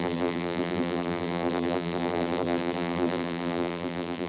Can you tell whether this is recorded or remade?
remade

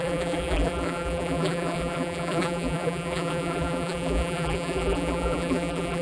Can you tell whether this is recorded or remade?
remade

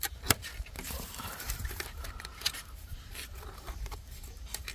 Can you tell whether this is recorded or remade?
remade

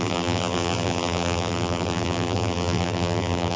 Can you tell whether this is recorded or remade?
remade